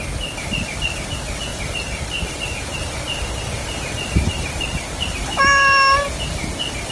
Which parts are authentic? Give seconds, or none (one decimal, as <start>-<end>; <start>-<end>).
0.0-1.5; 2.6-3.6; 5.4-6.9